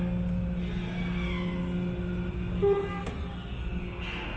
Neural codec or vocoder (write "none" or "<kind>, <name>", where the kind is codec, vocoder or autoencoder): none